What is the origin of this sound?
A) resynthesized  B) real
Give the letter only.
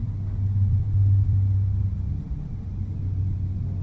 A